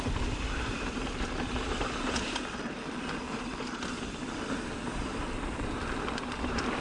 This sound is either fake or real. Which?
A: fake